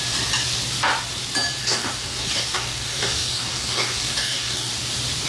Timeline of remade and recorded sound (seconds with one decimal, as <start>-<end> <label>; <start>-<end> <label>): 0.0-1.6 recorded; 1.6-4.7 remade; 4.7-5.3 recorded